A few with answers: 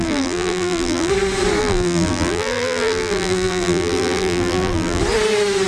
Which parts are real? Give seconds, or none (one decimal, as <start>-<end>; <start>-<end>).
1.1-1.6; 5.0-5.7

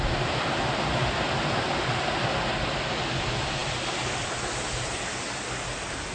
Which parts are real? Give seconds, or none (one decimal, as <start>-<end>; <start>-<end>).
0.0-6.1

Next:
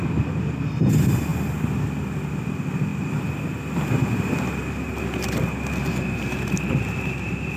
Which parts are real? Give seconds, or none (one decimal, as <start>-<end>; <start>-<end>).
0.0-7.6

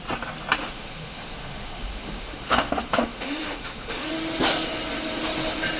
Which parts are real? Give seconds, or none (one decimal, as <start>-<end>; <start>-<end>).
0.0-0.6; 4.1-5.8

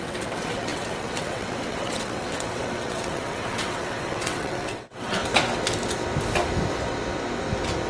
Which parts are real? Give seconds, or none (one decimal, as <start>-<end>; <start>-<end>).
5.2-7.9